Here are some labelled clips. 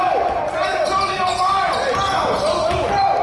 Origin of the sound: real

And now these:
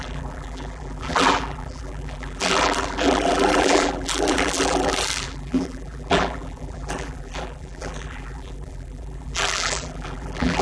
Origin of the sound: fake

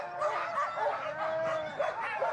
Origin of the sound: real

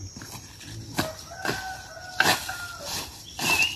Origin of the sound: real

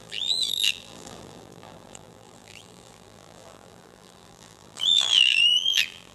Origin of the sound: fake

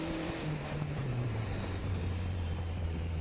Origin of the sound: fake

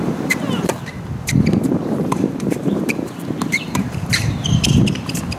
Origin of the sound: fake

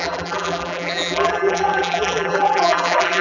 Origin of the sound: fake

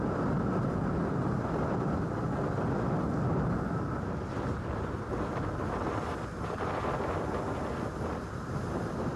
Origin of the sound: real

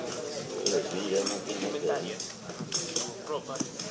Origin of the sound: real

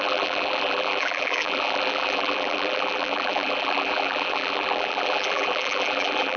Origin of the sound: fake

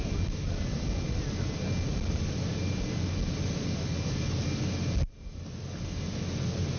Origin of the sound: real